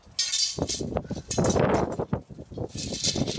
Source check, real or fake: real